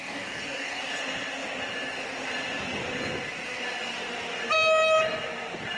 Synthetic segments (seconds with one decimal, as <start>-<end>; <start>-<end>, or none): 0.0-0.8